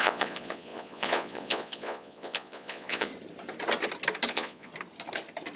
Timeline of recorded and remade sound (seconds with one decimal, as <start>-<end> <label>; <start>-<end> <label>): 0.0-3.1 remade; 3.1-4.3 recorded; 4.3-4.7 remade; 4.7-5.6 recorded